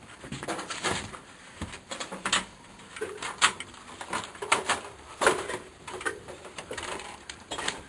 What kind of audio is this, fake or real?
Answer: fake